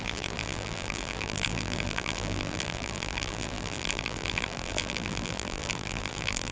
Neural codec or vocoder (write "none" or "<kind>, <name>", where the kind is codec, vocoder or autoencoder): vocoder, BigVGAN v2